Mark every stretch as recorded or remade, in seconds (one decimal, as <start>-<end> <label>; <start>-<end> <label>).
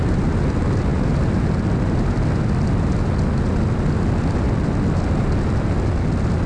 0.0-6.5 recorded